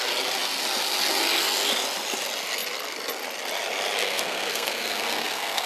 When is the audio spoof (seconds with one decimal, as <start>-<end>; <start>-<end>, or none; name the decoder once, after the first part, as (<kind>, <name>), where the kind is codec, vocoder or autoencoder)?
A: 4.0-5.7 (codec, SNAC)

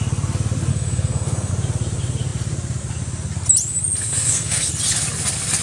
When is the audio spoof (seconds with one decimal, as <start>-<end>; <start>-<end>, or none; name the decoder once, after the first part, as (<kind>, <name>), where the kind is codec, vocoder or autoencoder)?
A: 0.7-1.5 (codec, SNAC); 4.0-4.7

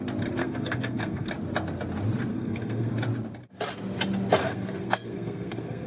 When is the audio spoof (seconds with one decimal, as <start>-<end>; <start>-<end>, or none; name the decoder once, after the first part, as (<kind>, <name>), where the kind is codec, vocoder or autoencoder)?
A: 0.4-1.3 (codec, SNAC); 2.3-2.9; 4.4-5.9

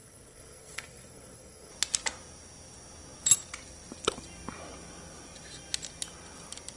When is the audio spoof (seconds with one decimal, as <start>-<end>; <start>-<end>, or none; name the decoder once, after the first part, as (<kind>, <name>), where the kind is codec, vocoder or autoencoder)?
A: 0.0-1.7 (codec, SNAC)